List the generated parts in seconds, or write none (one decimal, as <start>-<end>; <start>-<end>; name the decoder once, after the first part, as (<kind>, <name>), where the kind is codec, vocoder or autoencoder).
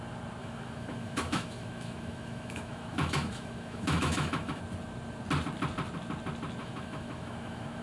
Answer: 0.4-4.6 (autoencoder, DAC-VAE); 6.6-7.8